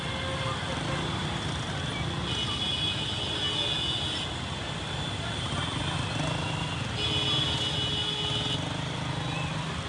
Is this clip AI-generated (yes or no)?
no